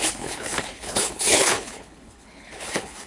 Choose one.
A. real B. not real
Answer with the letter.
B